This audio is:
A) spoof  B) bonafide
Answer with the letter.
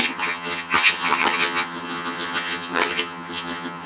A